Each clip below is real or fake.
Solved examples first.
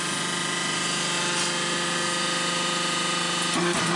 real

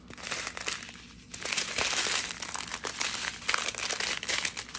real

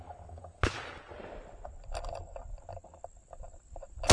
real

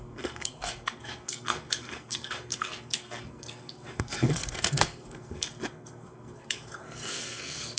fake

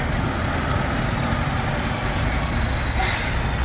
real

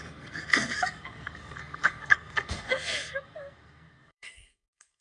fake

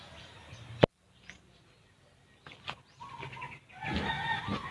real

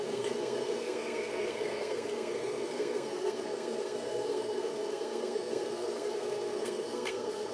fake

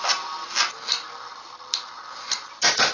real